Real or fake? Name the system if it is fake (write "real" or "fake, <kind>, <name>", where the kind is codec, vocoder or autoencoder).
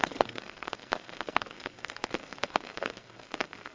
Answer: fake, codec, SNAC